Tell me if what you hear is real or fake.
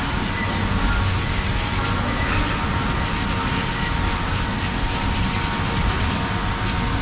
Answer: real